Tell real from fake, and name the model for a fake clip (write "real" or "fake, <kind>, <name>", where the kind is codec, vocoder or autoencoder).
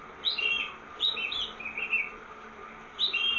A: real